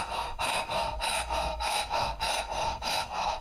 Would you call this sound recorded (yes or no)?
no